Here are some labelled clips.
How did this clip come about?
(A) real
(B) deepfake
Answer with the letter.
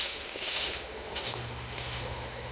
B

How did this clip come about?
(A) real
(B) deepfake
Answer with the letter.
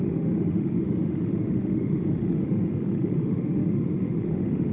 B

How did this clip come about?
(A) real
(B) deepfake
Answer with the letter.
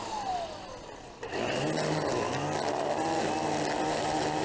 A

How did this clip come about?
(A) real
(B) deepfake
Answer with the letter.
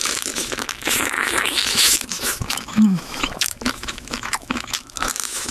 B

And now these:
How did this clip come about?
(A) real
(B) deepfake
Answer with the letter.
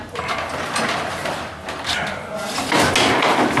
A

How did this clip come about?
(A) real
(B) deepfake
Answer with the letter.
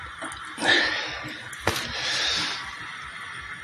A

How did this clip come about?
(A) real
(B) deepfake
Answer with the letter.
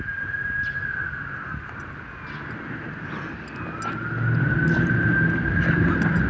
A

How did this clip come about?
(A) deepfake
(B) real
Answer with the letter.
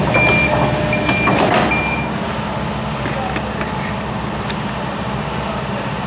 B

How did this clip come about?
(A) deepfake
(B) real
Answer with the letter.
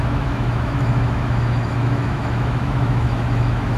A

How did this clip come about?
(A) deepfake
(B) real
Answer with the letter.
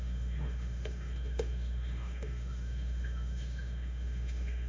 A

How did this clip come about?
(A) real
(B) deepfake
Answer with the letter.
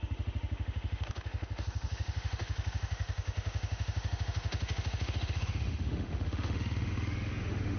B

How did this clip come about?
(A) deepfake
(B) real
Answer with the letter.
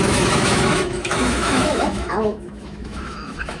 A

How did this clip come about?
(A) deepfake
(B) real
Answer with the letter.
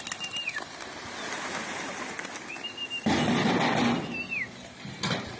B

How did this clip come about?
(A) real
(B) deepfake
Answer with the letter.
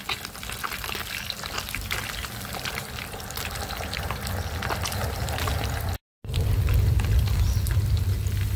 A